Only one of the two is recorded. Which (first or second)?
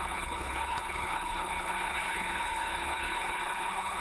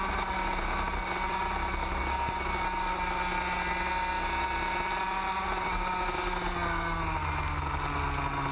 second